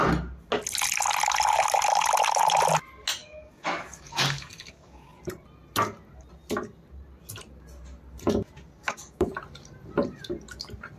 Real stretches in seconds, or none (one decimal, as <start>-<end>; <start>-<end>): 0.0-3.2; 5.2-8.8; 9.3-11.0